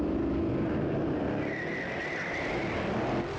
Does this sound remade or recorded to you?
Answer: recorded